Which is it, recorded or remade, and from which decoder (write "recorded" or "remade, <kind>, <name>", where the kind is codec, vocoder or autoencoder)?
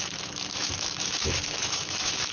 remade, autoencoder, DAC-VAE